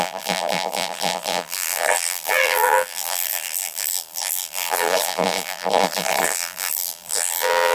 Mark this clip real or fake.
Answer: fake